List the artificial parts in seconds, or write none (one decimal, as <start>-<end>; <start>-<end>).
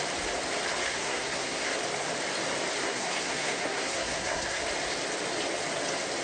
0.8-1.7; 2.8-4.6